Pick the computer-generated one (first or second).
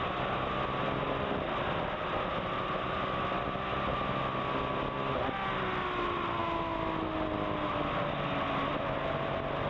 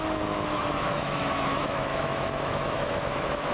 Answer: second